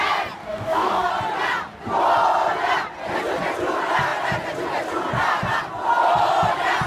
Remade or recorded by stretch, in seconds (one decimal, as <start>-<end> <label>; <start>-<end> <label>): 0.0-0.4 recorded; 0.4-1.1 remade; 1.1-6.9 recorded